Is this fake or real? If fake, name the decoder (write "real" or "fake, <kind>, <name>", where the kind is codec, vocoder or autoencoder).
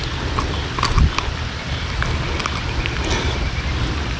real